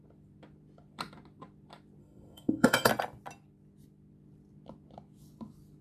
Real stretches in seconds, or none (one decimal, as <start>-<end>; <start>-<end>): 0.0-2.0; 2.9-5.8